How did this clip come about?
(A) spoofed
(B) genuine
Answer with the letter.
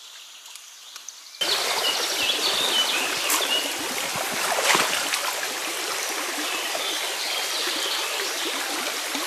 B